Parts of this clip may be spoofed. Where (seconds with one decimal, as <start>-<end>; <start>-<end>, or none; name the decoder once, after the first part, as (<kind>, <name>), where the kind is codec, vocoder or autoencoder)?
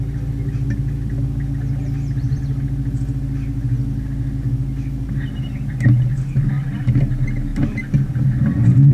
none